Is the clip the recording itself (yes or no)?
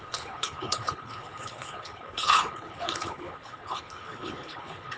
no